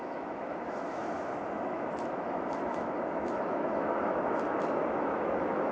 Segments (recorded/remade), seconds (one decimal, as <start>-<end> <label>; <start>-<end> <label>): 0.0-5.7 remade